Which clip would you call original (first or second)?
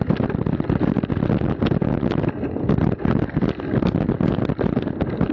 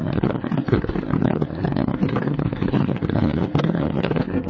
first